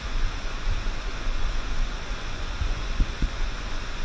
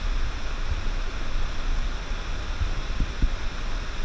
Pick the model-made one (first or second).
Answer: first